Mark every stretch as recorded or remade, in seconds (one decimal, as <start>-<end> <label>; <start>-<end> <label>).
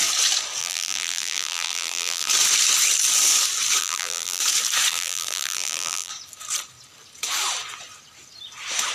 0.0-0.6 recorded; 0.6-2.3 remade; 2.3-3.8 recorded; 3.8-4.4 remade; 4.4-4.9 recorded; 4.9-6.1 remade; 6.1-8.9 recorded